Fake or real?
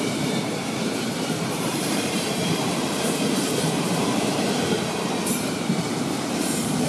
fake